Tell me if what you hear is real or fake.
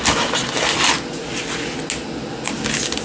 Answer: real